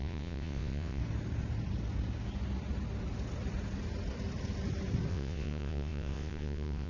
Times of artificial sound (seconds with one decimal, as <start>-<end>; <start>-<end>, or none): 0.0-1.0; 5.1-6.9